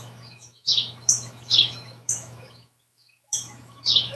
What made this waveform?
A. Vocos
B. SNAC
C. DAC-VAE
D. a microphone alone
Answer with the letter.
C